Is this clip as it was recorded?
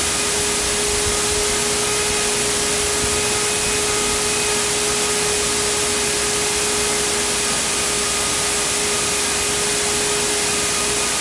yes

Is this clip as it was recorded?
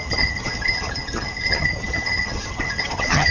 no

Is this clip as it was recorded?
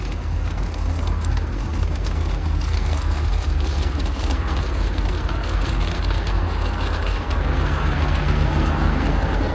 no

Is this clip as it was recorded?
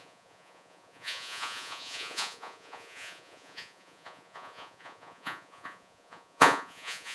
no